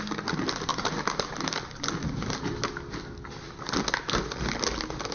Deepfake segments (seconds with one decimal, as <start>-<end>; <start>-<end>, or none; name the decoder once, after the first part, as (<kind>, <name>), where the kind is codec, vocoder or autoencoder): none